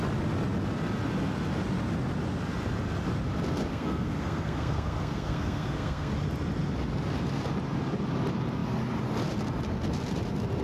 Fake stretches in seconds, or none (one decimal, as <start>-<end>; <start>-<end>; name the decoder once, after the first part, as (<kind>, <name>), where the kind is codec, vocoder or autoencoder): 3.7-6.1 (codec, SNAC)